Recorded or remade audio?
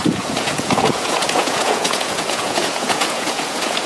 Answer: remade